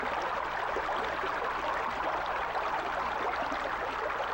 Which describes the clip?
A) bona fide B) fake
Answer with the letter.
A